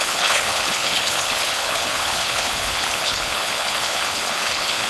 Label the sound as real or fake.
fake